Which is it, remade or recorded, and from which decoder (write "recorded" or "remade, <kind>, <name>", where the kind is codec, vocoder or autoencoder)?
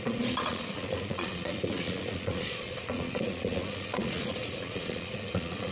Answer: remade, vocoder, Vocos